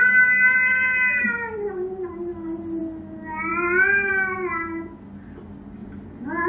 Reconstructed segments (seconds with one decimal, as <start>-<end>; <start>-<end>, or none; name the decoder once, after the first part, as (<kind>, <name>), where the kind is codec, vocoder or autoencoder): none